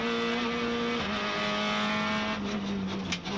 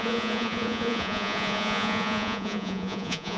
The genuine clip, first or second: first